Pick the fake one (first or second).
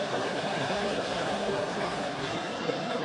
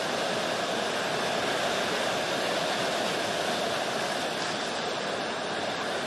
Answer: first